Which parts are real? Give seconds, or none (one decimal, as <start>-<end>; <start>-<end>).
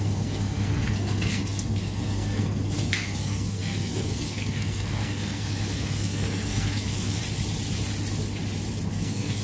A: 7.2-8.9